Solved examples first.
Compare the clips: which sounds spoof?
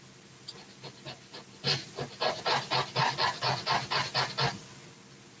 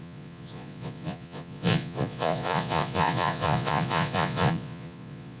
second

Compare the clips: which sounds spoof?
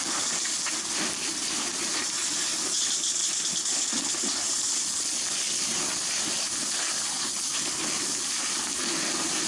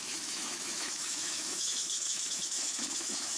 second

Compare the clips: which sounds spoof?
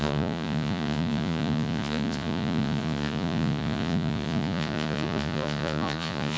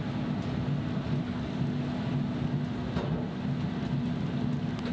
first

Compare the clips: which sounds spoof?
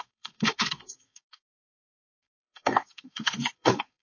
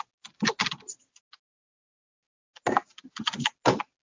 first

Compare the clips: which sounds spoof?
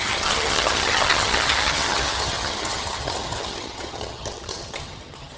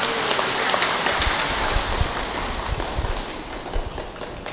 first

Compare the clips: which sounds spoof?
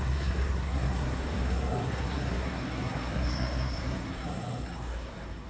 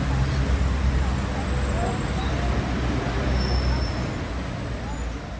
first